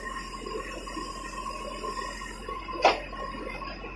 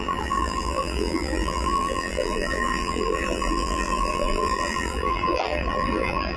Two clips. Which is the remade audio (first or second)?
second